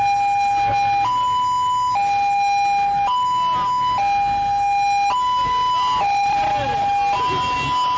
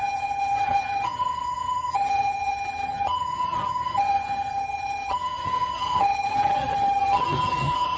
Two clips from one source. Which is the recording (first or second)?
first